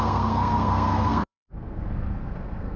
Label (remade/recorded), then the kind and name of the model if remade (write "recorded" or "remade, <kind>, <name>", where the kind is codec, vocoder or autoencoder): remade, codec, SNAC